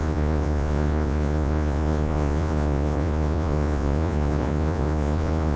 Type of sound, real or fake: fake